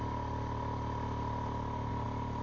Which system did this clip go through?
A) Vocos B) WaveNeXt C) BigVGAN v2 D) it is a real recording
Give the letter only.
D